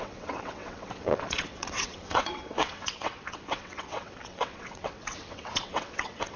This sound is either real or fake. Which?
fake